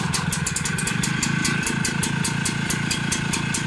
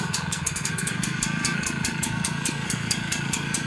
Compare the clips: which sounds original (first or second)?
first